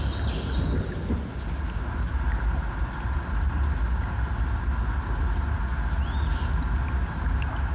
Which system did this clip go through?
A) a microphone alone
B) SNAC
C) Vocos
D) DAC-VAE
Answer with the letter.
A